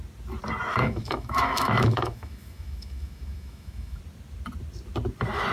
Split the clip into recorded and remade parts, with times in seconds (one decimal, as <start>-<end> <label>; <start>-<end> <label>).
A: 0.0-0.7 recorded; 0.7-4.0 remade; 4.0-5.5 recorded